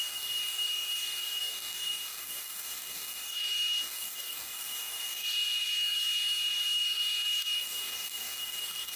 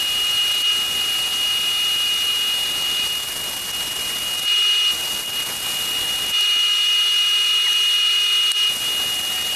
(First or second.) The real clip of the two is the second